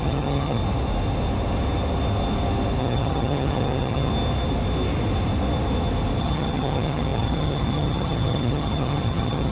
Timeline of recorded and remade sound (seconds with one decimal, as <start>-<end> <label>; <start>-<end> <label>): 0.0-0.6 remade; 0.6-2.8 recorded; 2.8-4.1 remade; 4.1-6.2 recorded; 6.2-9.5 remade